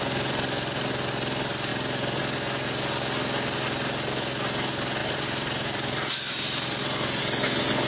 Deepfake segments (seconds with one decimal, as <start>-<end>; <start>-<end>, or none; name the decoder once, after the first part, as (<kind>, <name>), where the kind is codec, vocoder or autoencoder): 5.0-7.2 (vocoder, BigVGAN v2)